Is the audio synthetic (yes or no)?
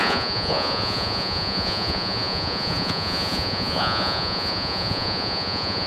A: yes